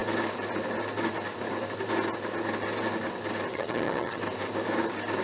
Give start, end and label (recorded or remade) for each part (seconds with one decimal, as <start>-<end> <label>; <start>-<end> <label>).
0.0-3.5 recorded; 3.5-4.2 remade; 4.2-5.2 recorded